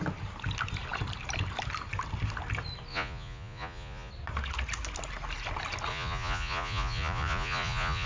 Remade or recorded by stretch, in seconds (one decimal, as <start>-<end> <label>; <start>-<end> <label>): 0.0-2.9 recorded; 2.9-4.1 remade; 4.1-5.9 recorded; 5.9-8.1 remade